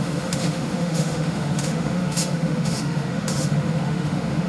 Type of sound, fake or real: fake